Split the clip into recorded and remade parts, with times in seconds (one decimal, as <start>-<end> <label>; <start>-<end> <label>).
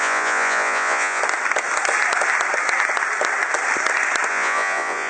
0.0-1.2 remade; 1.2-4.3 recorded; 4.3-5.1 remade